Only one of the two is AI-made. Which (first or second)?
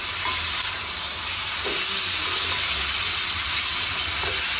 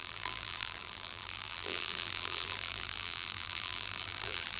second